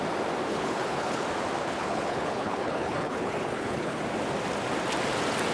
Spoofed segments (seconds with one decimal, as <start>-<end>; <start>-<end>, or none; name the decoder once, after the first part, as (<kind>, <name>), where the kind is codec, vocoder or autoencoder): 0.5-1.2 (codec, HILCodec); 1.6-4.0